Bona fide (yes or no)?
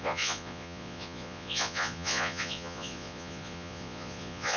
no